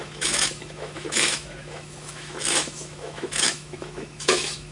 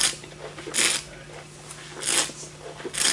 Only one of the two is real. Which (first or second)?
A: second